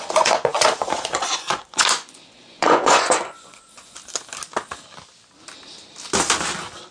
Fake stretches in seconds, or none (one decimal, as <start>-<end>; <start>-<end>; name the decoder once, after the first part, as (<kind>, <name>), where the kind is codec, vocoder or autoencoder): 0.0-4.0 (vocoder, Vocos)